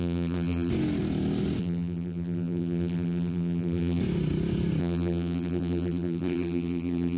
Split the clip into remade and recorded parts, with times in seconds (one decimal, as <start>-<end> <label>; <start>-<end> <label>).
0.0-0.7 remade; 0.7-1.6 recorded; 1.6-4.0 remade; 4.0-4.8 recorded; 4.8-7.2 remade